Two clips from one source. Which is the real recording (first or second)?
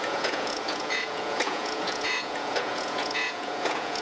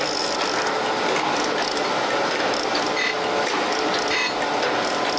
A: second